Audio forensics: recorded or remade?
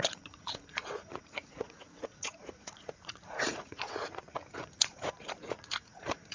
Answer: remade